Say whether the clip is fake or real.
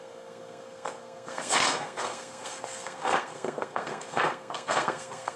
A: fake